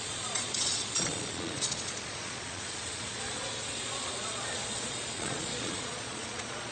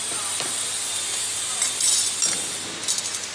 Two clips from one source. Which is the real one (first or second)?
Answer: second